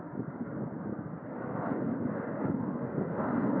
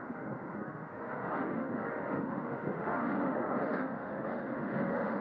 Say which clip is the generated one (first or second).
second